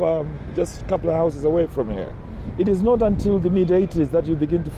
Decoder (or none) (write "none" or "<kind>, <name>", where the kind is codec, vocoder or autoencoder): none